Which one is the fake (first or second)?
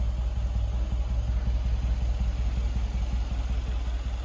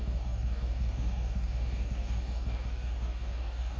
second